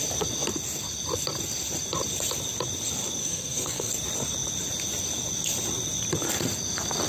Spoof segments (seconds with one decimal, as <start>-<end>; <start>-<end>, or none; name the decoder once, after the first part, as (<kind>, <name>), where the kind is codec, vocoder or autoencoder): 3.2-3.9 (codec, SNAC)

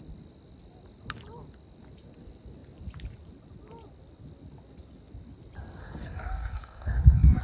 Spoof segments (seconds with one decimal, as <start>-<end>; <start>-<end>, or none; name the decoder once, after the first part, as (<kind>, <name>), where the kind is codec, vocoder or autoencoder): 5.8-7.4 (codec, SNAC)

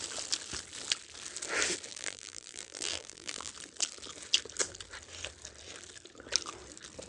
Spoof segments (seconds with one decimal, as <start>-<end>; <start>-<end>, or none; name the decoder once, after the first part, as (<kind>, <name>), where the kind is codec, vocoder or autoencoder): 1.9-3.5 (vocoder, BigVGAN v2)

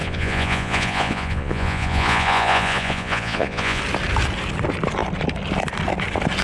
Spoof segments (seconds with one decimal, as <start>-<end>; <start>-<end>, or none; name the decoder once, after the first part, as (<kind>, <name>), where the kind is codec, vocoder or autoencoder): 0.0-3.8 (vocoder, Vocos)

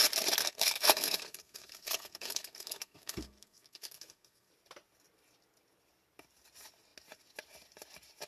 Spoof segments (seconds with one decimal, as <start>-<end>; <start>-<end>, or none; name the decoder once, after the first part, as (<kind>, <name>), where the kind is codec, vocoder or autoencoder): 0.4-4.5 (codec, SNAC)